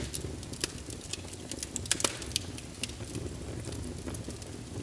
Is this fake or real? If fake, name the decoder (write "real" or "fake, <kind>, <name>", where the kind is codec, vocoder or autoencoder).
real